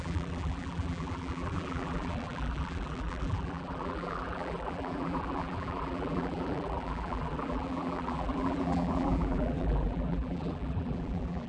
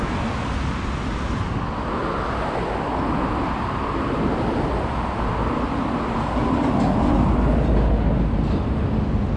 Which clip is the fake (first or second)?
first